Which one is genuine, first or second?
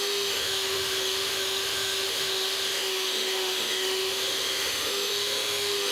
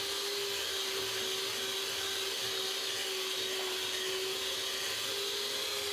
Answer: second